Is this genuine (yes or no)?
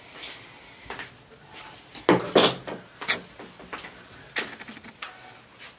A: yes